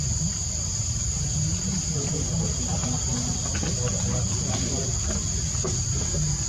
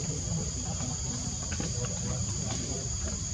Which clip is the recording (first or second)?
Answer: first